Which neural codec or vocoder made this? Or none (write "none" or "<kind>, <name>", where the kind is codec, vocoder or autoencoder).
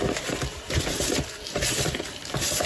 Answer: vocoder, BigVGAN v2